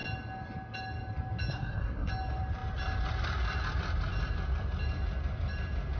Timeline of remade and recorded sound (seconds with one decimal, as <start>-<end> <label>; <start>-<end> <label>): 0.0-1.5 recorded; 1.5-2.1 remade; 2.1-6.0 recorded

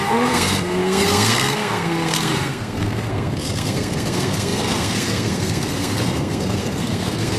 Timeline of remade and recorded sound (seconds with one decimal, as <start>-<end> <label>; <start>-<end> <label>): 0.0-7.4 remade

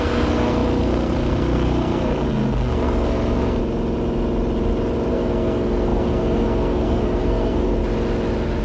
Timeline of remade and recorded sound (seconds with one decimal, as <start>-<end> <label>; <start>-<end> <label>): 0.0-3.6 remade; 3.6-5.1 recorded; 5.1-7.8 remade; 7.8-8.6 recorded

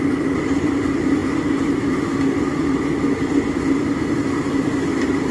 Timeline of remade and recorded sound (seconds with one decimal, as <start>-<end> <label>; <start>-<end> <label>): 0.0-5.3 recorded

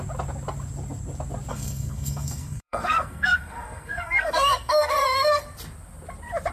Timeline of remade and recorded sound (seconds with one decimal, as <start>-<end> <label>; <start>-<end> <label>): 0.0-1.5 recorded; 1.5-5.4 remade; 5.4-6.5 recorded

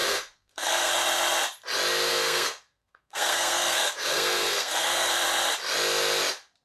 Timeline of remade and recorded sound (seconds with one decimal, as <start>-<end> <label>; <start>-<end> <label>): 0.0-0.9 remade; 0.9-2.1 recorded; 2.1-5.1 remade; 5.1-6.6 recorded

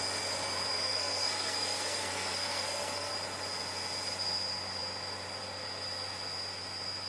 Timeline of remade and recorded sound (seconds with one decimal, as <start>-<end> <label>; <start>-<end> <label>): 0.0-0.7 recorded; 0.7-3.1 remade; 3.1-7.1 recorded